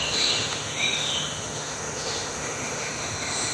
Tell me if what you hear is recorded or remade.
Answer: remade